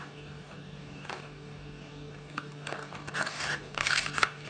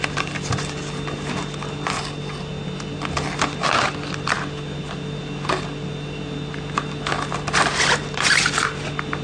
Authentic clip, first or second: second